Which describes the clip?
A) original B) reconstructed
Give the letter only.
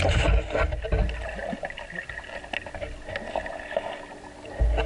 A